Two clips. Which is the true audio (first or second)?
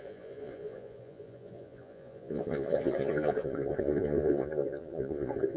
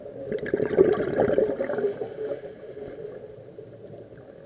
second